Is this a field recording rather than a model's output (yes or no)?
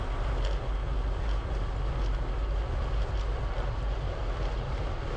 yes